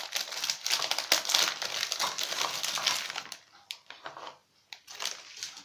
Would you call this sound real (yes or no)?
yes